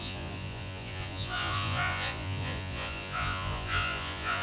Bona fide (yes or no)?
no